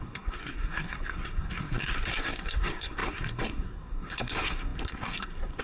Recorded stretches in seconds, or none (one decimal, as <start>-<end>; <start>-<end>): none